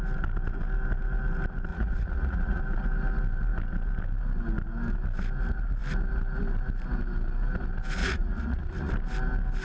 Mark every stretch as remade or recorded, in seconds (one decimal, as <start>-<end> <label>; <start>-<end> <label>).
0.0-1.7 recorded; 1.7-2.6 remade; 2.6-8.0 recorded; 8.0-8.9 remade; 8.9-9.6 recorded